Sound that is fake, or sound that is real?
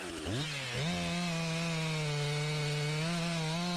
real